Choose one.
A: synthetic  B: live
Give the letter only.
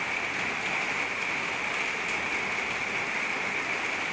B